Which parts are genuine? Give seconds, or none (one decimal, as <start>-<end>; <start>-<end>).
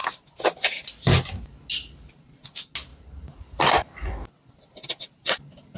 0.0-2.9; 4.3-5.8